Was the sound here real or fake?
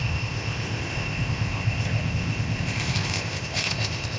fake